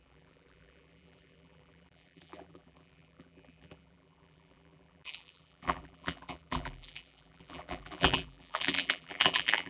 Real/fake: fake